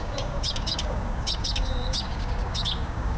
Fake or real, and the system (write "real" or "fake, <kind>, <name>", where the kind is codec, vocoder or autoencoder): fake, codec, DAC